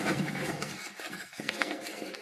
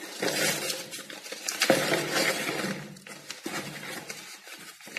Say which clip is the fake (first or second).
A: first